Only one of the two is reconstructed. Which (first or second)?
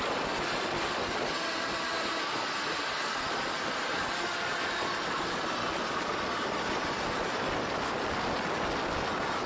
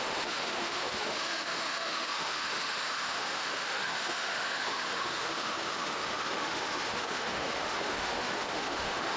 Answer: second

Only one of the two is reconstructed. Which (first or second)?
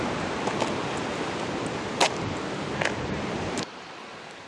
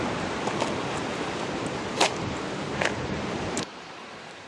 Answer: second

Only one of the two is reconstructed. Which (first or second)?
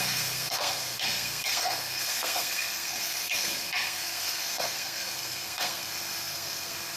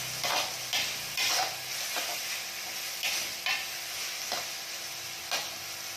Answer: first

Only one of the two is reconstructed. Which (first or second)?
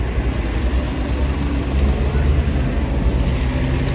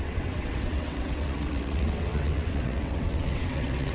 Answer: second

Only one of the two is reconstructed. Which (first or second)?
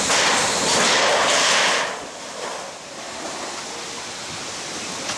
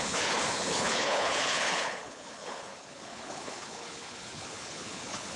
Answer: second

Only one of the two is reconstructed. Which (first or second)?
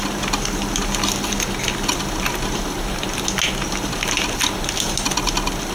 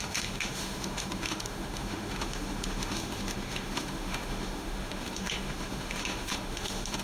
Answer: second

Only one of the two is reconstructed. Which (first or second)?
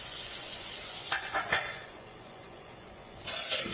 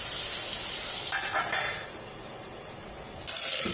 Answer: first